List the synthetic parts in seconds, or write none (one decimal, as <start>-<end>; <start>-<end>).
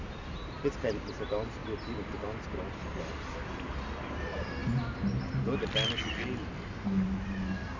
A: none